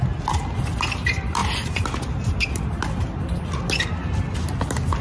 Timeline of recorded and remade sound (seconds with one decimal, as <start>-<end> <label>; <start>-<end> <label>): 0.0-5.0 recorded